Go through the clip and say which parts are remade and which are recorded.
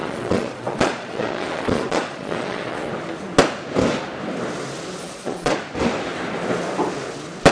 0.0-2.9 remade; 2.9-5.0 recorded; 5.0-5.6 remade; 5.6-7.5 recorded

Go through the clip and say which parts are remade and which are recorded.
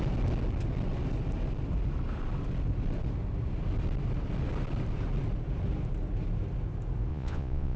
0.0-7.1 recorded; 7.1-7.8 remade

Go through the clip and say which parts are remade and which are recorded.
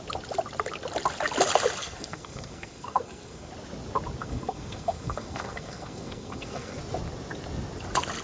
0.0-1.8 recorded; 1.8-3.5 remade; 3.5-4.2 recorded; 4.2-6.8 remade; 6.8-8.2 recorded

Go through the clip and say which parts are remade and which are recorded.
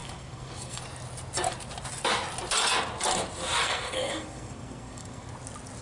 0.0-0.8 remade; 0.8-3.6 recorded; 3.6-5.3 remade; 5.3-5.8 recorded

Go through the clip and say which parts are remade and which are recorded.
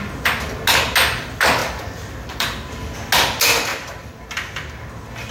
0.0-1.6 recorded; 1.6-2.7 remade; 2.7-3.7 recorded; 3.7-4.2 remade; 4.2-5.3 recorded